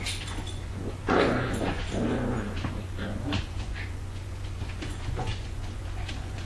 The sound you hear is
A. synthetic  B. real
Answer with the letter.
A